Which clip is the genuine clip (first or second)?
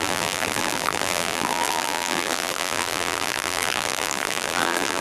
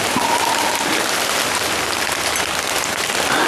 second